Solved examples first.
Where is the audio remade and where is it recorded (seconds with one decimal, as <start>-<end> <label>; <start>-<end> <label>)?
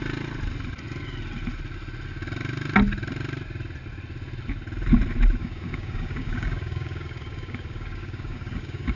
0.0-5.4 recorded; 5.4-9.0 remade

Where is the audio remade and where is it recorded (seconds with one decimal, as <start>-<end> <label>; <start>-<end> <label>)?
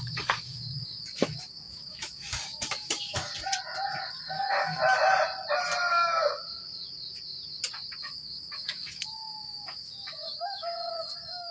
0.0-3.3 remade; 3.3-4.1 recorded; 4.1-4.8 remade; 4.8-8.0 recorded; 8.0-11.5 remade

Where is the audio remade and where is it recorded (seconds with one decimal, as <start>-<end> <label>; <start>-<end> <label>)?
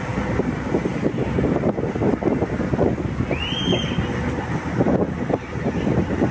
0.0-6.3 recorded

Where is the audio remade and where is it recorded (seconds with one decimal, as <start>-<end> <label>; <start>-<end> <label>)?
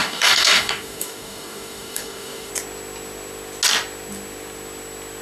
0.0-2.5 remade; 2.5-5.2 recorded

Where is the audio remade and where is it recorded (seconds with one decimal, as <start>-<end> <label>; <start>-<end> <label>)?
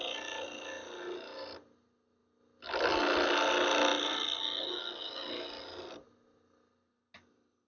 0.0-7.7 recorded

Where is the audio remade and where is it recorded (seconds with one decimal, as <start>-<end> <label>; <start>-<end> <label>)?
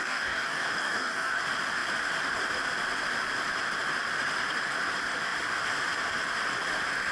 0.0-1.3 remade; 1.3-7.1 recorded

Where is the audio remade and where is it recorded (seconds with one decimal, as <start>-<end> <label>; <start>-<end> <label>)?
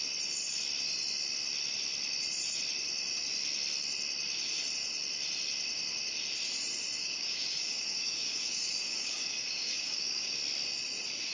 0.0-7.0 recorded; 7.0-10.3 remade; 10.3-11.3 recorded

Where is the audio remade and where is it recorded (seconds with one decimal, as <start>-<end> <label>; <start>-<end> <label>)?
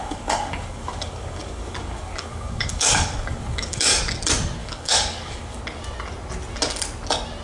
0.0-4.0 remade; 4.0-4.6 recorded; 4.6-5.6 remade; 5.6-7.4 recorded